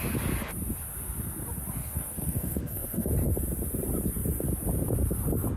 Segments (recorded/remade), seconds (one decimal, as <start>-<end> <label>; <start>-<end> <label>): 0.0-1.8 recorded; 1.8-3.1 remade; 3.1-5.6 recorded